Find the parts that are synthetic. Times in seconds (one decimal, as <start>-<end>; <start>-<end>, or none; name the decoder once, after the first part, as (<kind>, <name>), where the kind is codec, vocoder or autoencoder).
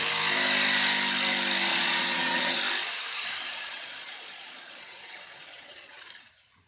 1.7-2.6 (vocoder, Vocos); 3.5-6.1